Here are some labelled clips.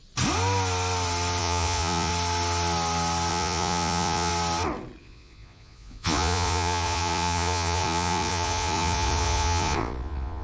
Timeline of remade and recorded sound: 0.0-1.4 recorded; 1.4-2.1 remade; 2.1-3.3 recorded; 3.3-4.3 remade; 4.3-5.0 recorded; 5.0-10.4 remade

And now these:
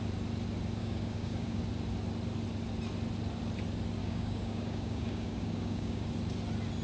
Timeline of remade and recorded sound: 0.0-0.8 recorded; 0.8-1.6 remade; 1.6-4.0 recorded; 4.0-6.1 remade; 6.1-6.8 recorded

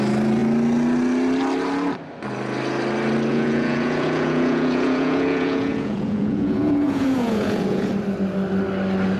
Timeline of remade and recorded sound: 0.0-3.3 recorded; 3.3-7.9 remade; 7.9-9.2 recorded

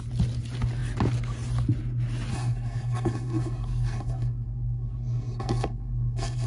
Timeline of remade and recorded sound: 0.0-2.3 recorded; 2.3-6.5 remade